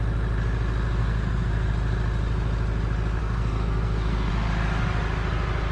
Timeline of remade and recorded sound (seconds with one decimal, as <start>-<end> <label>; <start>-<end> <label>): 0.0-1.0 recorded; 1.0-1.7 remade; 1.7-3.2 recorded; 3.2-4.3 remade; 4.3-5.7 recorded